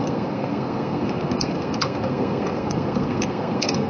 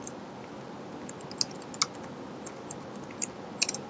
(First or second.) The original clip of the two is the second